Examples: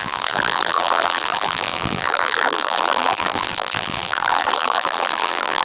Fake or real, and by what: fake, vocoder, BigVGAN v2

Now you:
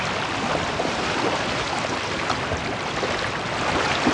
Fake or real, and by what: real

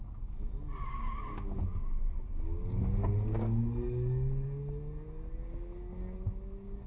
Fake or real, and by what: real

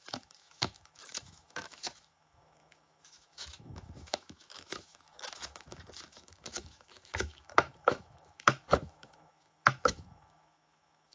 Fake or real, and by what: fake, autoencoder, DAC-VAE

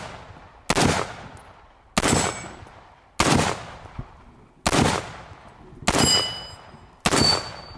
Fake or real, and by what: real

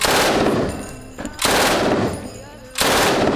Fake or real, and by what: real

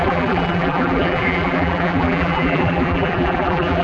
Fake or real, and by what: fake, vocoder, BigVGAN v2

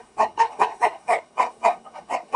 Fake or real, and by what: fake, codec, SNAC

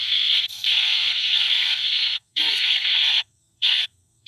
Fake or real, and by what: fake, codec, SNAC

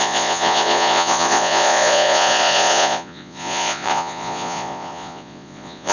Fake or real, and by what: fake, vocoder, Vocos